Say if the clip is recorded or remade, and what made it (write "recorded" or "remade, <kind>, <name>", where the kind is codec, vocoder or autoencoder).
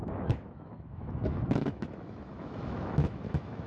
remade, autoencoder, DAC-VAE